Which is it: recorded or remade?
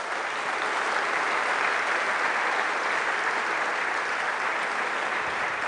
recorded